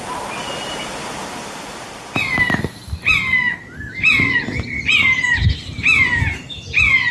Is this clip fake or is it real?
real